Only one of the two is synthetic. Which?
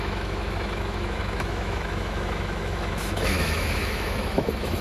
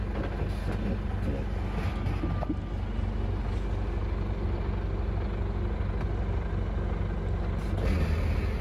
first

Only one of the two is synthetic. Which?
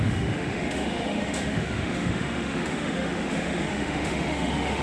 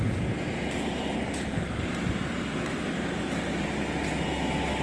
first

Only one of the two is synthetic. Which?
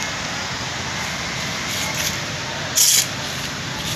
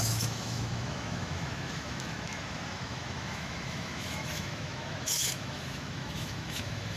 second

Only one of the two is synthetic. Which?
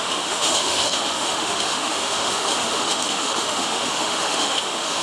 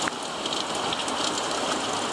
first